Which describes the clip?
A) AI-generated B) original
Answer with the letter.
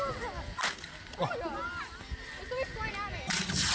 B